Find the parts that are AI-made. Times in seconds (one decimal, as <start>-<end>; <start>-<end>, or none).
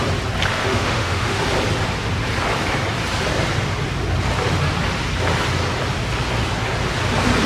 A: 0.6-1.4